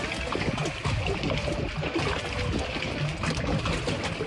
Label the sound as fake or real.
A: real